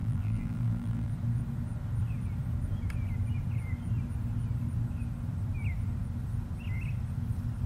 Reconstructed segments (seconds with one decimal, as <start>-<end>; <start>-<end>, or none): 0.0-1.1